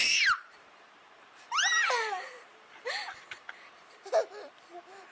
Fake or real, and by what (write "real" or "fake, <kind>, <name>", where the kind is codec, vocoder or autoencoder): fake, vocoder, BigVGAN v2